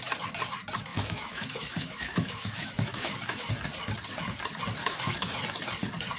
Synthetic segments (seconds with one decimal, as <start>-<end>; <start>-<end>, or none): 0.9-3.5; 4.8-5.4